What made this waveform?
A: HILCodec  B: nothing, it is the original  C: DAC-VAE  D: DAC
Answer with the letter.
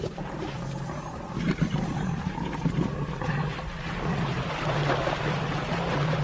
B